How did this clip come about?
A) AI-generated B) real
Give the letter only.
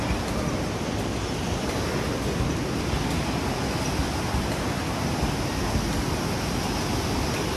B